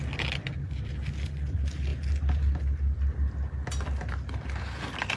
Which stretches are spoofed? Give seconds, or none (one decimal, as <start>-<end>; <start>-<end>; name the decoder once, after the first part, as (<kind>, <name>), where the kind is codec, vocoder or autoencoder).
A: none